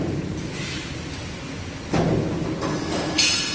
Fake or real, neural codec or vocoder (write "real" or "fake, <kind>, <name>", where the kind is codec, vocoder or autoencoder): real